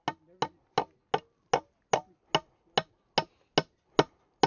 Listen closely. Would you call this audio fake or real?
real